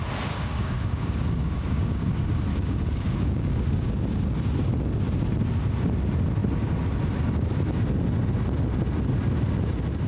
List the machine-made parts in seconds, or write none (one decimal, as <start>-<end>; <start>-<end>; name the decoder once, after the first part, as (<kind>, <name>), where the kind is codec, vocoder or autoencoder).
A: 0.5-2.1 (codec, DAC); 2.5-4.2